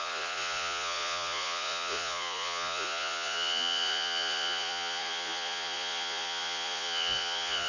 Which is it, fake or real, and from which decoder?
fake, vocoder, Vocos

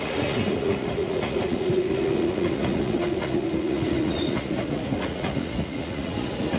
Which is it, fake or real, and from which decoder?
fake, vocoder, Vocos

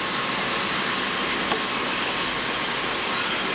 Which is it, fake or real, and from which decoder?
real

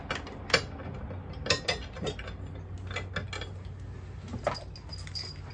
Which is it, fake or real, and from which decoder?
real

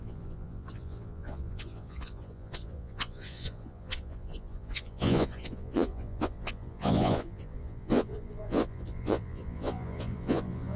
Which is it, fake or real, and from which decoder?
fake, vocoder, Vocos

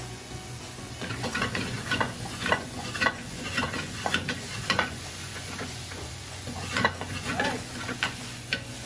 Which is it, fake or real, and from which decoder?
fake, vocoder, Vocos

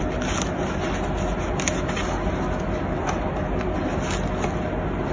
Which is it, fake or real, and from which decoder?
real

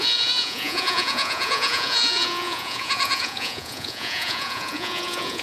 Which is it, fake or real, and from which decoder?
fake, vocoder, Vocos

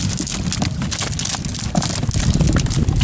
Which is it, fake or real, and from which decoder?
real